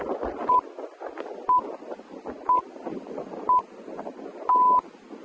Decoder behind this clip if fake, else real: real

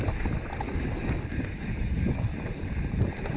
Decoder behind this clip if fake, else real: real